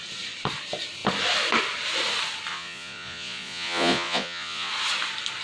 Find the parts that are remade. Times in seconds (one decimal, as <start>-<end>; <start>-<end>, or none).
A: 2.5-4.7